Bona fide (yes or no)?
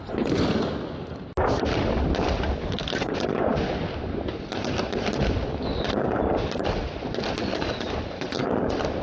yes